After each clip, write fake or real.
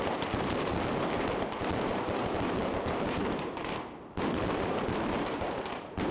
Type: fake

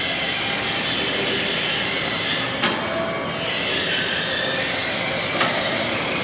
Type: real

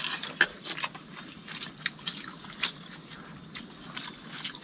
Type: real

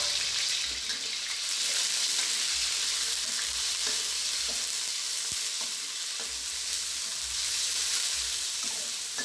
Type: real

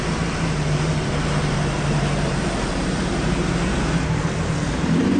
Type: fake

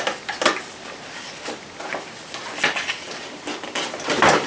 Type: real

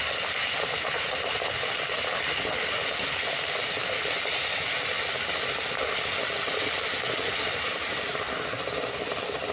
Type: real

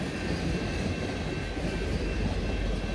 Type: real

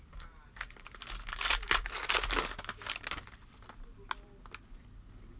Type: real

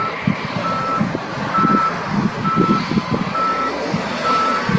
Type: real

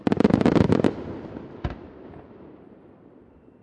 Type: fake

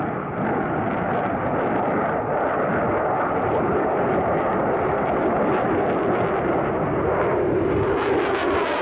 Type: real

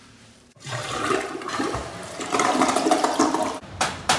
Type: fake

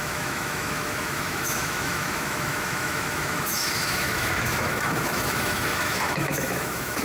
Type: fake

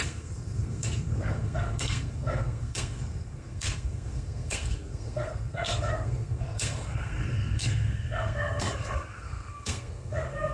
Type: fake